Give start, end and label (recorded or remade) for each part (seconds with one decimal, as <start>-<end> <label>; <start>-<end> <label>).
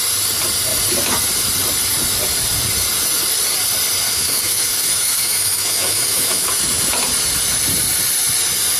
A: 0.0-4.1 recorded; 4.1-6.5 remade; 6.5-8.8 recorded